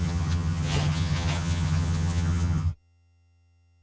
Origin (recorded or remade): remade